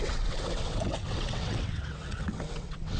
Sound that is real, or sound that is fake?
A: fake